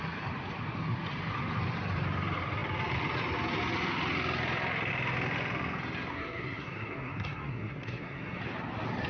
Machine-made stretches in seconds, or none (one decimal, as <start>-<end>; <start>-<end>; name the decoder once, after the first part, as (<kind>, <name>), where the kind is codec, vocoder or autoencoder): 6.1-8.4 (codec, SNAC)